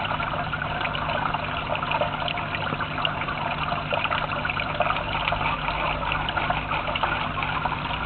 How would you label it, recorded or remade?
recorded